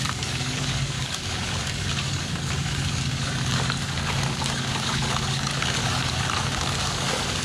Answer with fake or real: fake